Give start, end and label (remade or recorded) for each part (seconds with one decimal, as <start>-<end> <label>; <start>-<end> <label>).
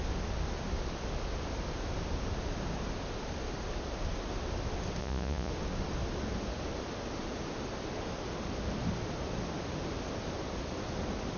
0.0-5.0 recorded; 5.0-5.5 remade; 5.5-11.4 recorded